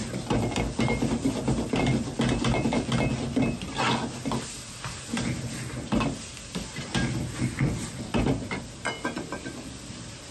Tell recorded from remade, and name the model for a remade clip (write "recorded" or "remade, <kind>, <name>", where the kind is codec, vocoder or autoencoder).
recorded